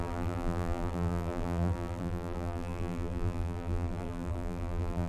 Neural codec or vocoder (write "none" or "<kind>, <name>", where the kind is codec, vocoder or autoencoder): vocoder, BigVGAN v2